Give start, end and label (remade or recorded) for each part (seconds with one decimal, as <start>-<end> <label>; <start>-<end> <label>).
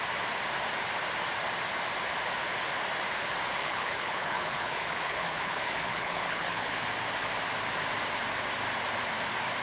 0.0-3.6 recorded; 3.6-6.9 remade; 6.9-9.6 recorded